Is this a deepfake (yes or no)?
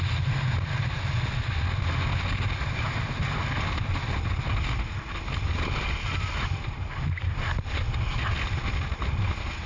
no